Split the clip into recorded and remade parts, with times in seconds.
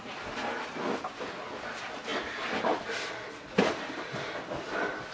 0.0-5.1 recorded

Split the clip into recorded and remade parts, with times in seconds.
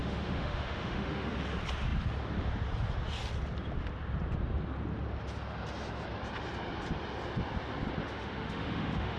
0.0-1.3 remade; 1.3-8.0 recorded; 8.0-9.2 remade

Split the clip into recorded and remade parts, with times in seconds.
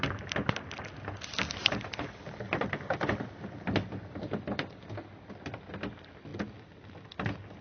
0.0-7.6 recorded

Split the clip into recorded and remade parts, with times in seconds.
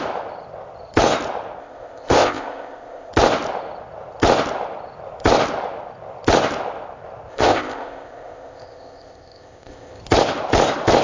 0.0-1.6 recorded; 1.6-3.1 remade; 3.1-7.3 recorded; 7.3-10.0 remade; 10.0-11.0 recorded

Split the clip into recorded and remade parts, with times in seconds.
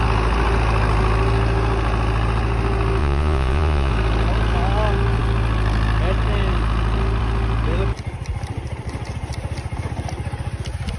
0.0-3.0 recorded; 3.0-3.9 remade; 3.9-11.0 recorded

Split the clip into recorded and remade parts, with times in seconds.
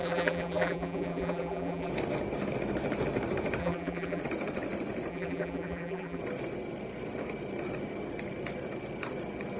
0.0-1.9 remade; 1.9-3.6 recorded; 3.6-4.2 remade; 4.2-5.1 recorded; 5.1-6.2 remade; 6.2-9.6 recorded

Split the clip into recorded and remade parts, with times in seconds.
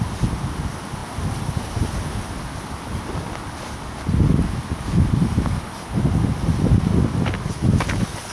0.0-8.3 recorded